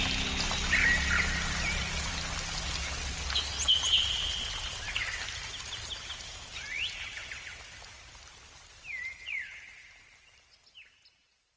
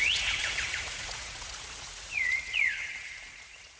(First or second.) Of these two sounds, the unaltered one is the first